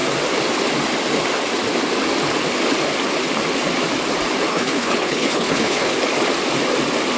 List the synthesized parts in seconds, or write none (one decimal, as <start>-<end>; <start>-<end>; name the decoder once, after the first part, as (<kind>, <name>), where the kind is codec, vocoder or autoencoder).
4.5-5.9 (codec, HILCodec)